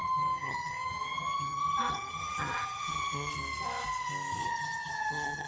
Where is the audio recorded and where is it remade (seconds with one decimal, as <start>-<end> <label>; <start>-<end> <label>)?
0.0-3.3 remade; 3.3-4.4 recorded; 4.4-5.5 remade